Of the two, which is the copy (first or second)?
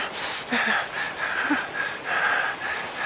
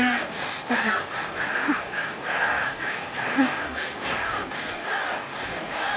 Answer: second